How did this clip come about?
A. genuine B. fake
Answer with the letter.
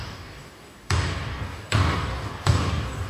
B